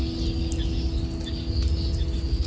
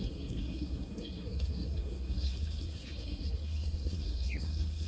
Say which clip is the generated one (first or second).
second